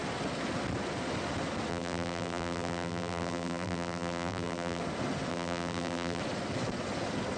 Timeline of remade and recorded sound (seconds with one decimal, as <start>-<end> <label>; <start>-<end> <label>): 0.0-1.7 recorded; 1.7-4.8 remade; 4.8-5.3 recorded; 5.3-6.2 remade; 6.2-7.4 recorded